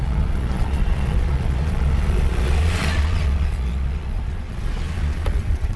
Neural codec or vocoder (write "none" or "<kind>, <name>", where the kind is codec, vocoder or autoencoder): vocoder, Vocos